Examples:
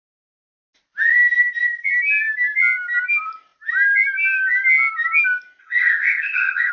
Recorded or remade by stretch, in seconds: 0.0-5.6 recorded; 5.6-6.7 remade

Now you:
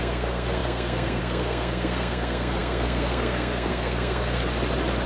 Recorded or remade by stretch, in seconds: 0.0-4.4 remade; 4.4-5.1 recorded

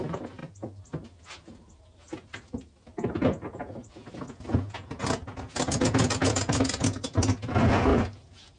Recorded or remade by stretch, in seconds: 0.0-7.9 recorded; 7.9-8.6 remade

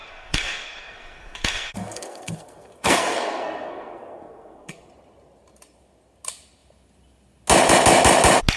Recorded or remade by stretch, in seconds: 0.0-4.9 remade; 4.9-8.6 recorded